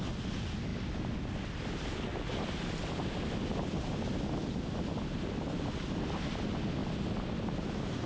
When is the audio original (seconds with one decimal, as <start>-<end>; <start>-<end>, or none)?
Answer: 0.0-8.1